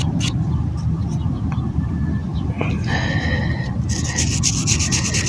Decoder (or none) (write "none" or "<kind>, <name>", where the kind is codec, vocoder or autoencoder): none